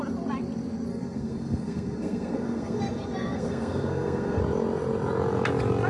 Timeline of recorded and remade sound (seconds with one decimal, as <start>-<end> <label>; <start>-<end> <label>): 0.0-0.9 recorded; 0.9-4.4 remade; 4.4-5.9 recorded